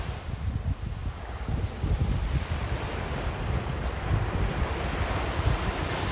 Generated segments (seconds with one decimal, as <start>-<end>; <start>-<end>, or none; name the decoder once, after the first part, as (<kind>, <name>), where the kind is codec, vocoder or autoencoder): none